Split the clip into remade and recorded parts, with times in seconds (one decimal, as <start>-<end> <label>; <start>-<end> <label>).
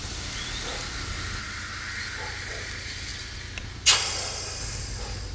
0.0-5.3 recorded